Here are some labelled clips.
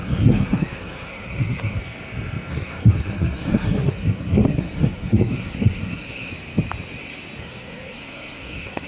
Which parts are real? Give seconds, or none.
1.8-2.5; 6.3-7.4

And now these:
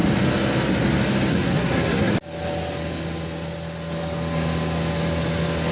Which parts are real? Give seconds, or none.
0.0-1.3; 2.1-5.7

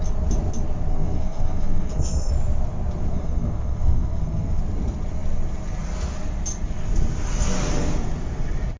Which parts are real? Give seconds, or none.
0.0-0.9; 2.3-3.1; 4.6-8.8